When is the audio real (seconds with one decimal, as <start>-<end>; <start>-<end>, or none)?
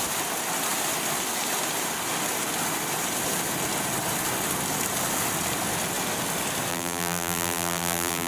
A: 0.0-6.7